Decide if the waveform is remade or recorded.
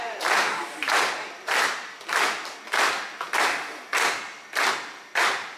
recorded